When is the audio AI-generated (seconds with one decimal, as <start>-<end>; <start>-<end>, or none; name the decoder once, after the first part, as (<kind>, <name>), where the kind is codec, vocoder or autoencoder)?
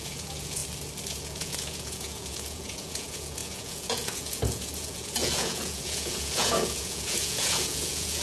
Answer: 0.0-0.6 (vocoder, Vocos); 1.1-8.2